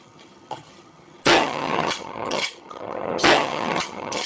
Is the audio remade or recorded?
remade